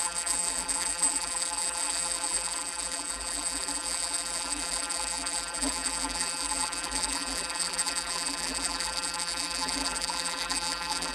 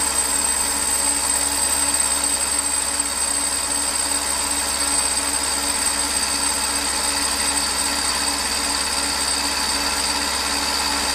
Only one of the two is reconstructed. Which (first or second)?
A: first